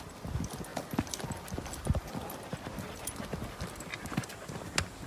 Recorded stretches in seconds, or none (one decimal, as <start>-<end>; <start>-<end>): 0.0-5.1